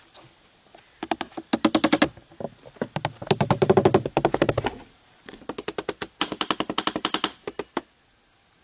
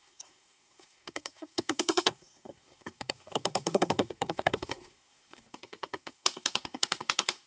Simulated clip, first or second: second